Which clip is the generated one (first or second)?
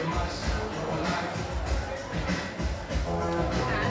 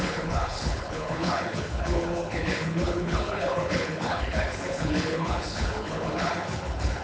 second